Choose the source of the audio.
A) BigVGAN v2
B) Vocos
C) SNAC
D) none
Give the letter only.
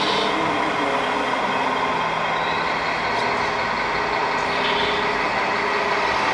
D